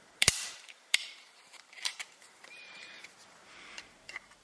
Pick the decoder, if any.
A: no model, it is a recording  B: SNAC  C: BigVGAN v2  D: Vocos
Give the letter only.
C